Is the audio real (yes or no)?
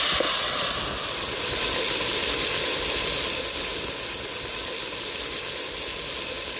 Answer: yes